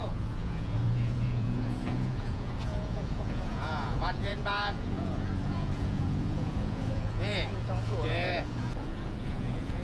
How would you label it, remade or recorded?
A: remade